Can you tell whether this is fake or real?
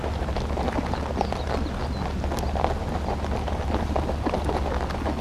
real